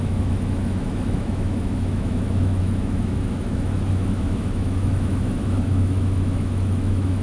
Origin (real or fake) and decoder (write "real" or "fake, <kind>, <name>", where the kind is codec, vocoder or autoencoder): fake, autoencoder, DAC-VAE